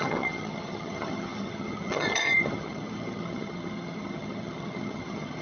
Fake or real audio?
fake